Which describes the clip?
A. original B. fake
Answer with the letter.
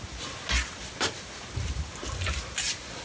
A